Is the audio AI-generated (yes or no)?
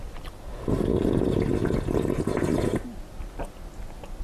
no